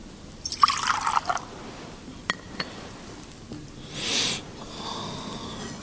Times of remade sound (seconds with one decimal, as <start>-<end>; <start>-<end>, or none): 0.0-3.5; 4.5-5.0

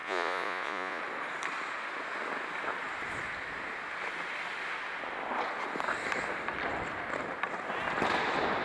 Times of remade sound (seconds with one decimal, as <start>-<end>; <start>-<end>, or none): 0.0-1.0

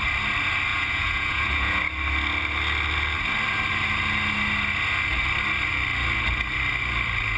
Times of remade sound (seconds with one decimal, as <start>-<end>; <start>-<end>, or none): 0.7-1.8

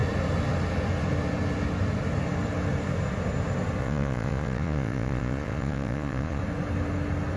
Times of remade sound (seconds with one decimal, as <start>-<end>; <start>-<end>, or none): 3.8-6.4

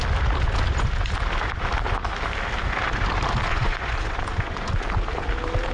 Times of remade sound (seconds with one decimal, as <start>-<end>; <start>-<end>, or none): 3.5-4.7